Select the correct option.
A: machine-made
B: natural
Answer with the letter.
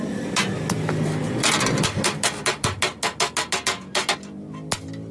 B